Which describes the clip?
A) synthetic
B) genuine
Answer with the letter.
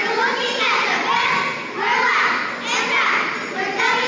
B